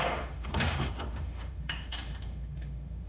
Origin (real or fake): fake